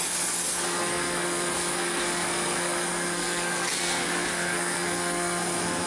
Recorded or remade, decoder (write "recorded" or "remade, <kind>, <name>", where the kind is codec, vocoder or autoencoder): remade, codec, SNAC